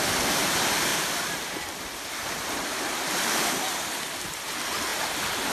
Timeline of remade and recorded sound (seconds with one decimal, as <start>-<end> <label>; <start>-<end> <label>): 0.0-0.9 recorded; 0.9-4.2 remade; 4.2-5.5 recorded